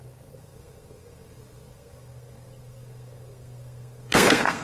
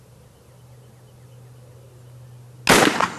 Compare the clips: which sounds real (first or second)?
second